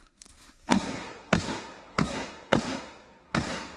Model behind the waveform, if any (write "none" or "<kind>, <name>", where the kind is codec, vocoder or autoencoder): codec, SNAC